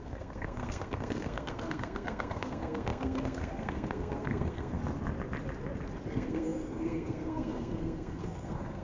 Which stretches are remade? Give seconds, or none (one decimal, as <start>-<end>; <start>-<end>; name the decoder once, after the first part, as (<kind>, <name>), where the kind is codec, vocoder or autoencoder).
0.0-4.8 (codec, SNAC); 6.1-8.8